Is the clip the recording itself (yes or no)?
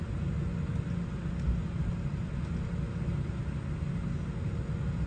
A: yes